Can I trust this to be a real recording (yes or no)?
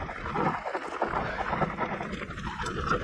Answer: yes